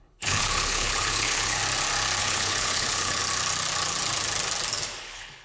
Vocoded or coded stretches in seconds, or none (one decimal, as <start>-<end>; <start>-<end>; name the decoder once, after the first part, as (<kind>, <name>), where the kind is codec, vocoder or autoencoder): 0.0-1.6 (codec, HILCodec); 2.2-3.2; 5.0-5.4

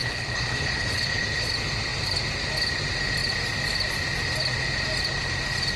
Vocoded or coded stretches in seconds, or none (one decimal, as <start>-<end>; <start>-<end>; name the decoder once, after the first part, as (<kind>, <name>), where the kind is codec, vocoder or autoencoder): 0.0-1.5 (codec, HILCodec)

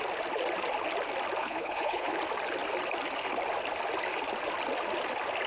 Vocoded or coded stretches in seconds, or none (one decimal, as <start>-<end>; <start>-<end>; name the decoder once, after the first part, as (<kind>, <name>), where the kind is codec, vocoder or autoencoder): 1.4-2.1 (codec, HILCodec)

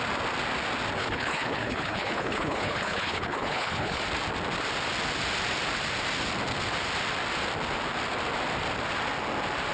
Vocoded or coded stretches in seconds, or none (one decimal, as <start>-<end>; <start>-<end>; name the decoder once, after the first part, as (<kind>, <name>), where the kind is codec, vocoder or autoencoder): 1.0-4.0 (codec, HILCodec)

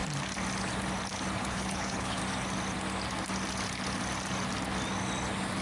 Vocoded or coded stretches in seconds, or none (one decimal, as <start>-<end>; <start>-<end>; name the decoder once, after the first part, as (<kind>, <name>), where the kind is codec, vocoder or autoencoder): 1.4-2.2 (codec, HILCodec)

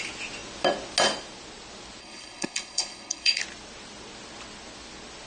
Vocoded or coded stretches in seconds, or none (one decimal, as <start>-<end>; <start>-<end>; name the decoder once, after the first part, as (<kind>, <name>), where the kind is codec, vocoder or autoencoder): 2.0-3.4 (codec, HILCodec)

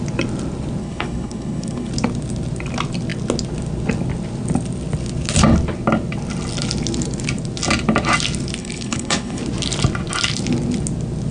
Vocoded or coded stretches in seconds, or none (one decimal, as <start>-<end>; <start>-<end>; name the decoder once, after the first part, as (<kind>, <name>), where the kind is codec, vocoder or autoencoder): 0.8-1.9 (codec, HILCodec); 8.6-9.4

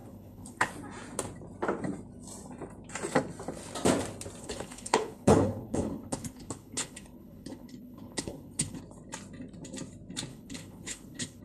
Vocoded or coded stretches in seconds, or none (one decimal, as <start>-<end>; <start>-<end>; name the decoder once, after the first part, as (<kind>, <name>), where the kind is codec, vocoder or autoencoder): 0.0-0.7 (codec, HILCodec); 4.4-8.8; 10.3-11.4